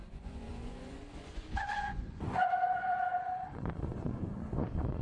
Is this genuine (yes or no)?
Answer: no